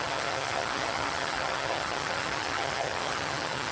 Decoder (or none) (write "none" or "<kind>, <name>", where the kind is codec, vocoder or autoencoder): vocoder, HiFi-GAN